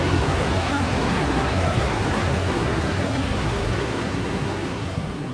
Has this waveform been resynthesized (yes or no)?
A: yes